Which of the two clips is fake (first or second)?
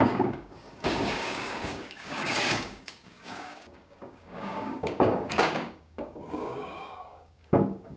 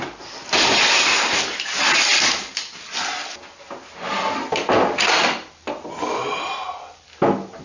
first